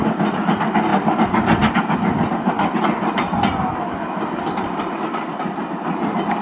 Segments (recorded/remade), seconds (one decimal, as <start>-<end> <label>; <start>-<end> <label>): 0.0-6.4 recorded